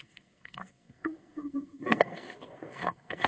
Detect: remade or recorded remade